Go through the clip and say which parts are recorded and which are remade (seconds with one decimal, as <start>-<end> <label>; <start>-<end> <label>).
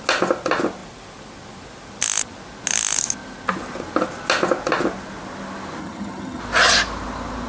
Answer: 0.0-5.8 recorded; 5.8-6.4 remade; 6.4-7.5 recorded